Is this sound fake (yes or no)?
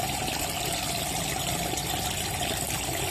no